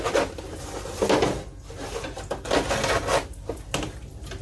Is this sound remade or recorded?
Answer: recorded